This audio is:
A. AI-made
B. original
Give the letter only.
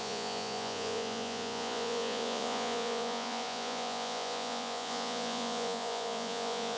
A